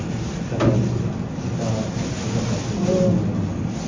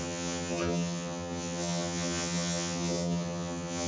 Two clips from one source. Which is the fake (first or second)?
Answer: second